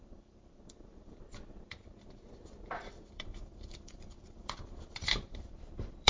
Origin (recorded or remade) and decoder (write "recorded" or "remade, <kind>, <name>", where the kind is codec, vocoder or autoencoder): remade, vocoder, BigVGAN v2